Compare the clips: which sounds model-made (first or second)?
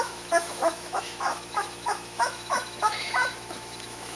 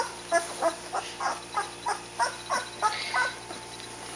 first